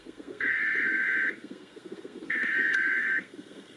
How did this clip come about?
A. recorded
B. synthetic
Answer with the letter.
B